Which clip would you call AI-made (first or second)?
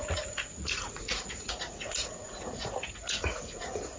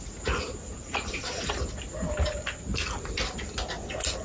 first